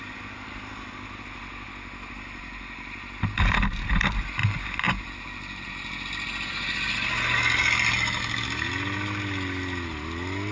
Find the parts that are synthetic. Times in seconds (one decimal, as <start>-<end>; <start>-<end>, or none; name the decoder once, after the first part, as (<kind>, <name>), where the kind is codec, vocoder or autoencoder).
none